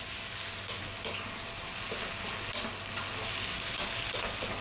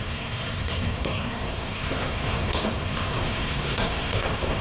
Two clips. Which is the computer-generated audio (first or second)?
second